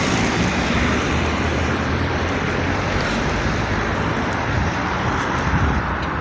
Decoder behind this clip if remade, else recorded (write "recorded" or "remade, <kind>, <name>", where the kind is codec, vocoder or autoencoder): remade, vocoder, BigVGAN v2